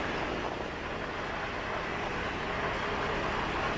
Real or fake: real